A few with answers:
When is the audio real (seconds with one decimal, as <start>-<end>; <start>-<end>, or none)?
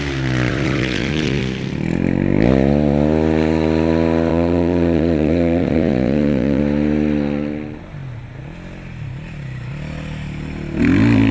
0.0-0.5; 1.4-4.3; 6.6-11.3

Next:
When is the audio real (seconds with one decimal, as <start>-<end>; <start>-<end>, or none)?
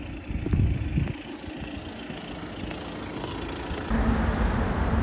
0.0-5.0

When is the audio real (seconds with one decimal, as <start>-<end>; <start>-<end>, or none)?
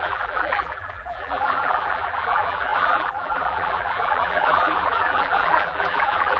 none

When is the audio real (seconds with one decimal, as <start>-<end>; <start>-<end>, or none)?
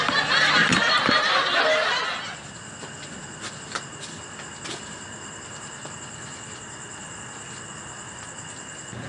0.0-0.6; 1.2-9.1